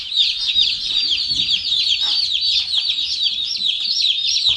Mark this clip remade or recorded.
remade